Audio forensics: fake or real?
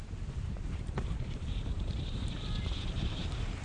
fake